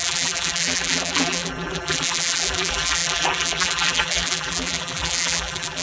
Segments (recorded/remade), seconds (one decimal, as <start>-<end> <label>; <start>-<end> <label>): 0.0-5.8 remade